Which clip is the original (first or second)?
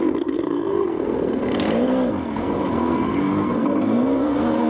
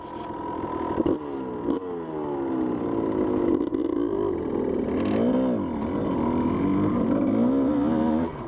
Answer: second